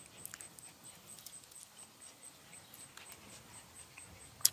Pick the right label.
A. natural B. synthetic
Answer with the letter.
A